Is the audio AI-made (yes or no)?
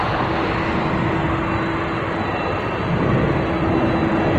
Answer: no